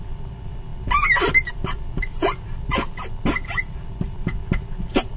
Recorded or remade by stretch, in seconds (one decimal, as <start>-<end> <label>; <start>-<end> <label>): 0.0-2.7 remade; 2.7-3.5 recorded; 3.5-5.2 remade